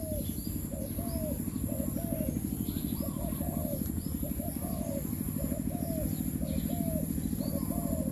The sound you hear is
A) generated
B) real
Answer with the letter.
B